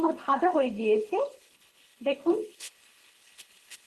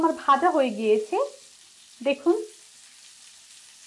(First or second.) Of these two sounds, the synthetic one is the first